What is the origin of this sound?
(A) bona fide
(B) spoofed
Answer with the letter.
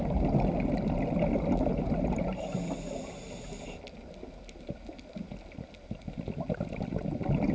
A